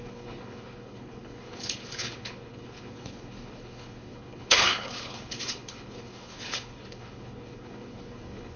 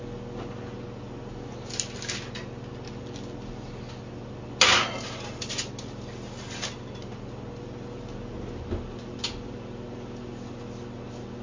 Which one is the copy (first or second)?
first